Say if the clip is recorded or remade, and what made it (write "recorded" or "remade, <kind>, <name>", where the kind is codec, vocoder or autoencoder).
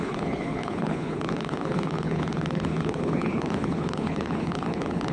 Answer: remade, codec, HILCodec